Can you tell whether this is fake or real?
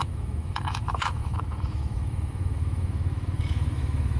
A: fake